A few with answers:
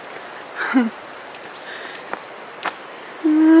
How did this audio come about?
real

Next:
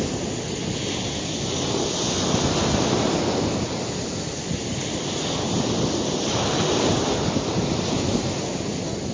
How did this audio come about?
real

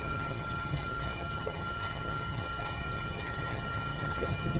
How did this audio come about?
fake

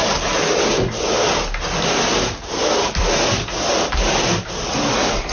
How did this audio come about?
real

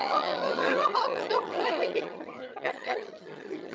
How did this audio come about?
fake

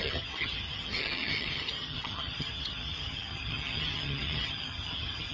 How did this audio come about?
fake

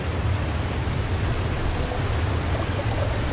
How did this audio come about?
real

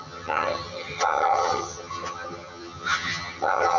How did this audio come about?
fake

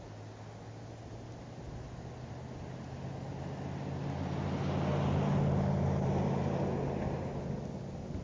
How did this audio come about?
real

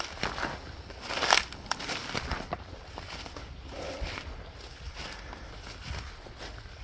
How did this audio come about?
real